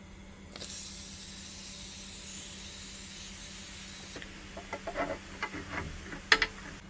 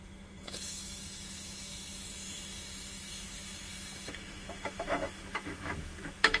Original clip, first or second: first